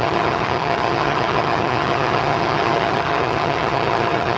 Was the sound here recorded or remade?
remade